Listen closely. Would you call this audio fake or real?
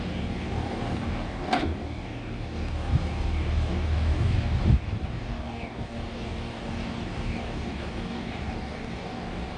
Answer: fake